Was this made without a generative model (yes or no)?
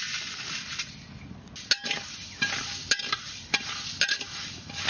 yes